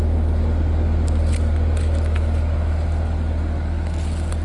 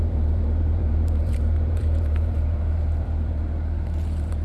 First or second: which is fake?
second